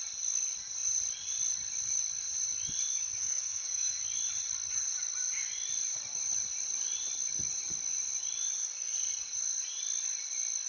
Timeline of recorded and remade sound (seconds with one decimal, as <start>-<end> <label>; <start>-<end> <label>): 0.0-3.2 recorded; 3.2-4.0 remade; 4.0-10.7 recorded